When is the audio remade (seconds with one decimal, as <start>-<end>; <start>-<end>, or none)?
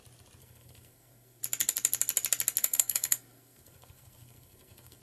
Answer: 0.4-1.4; 2.6-5.0